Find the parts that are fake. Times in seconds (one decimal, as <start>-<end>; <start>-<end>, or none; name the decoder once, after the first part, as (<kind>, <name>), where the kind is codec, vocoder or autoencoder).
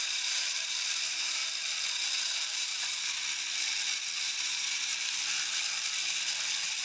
0.0-1.4 (vocoder, BigVGAN v2); 2.2-2.7; 4.4-4.9